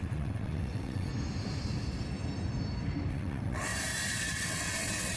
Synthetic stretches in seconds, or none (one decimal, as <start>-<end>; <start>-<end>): 0.0-1.1; 3.1-3.7; 4.2-5.2